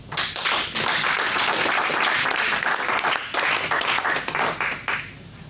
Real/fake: real